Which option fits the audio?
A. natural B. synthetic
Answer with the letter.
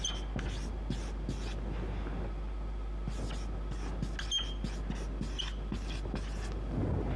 A